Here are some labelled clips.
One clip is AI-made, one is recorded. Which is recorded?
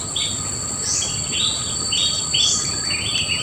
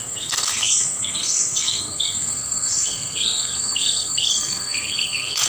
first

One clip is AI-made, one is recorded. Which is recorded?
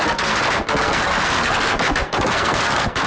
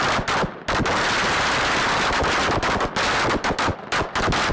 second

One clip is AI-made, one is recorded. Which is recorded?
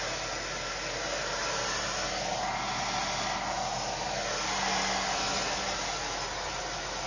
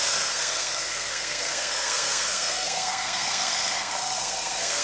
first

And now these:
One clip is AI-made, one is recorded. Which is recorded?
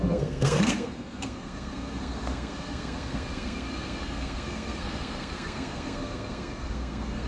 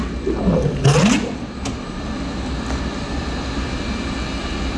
second